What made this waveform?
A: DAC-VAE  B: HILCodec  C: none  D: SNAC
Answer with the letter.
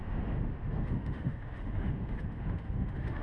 A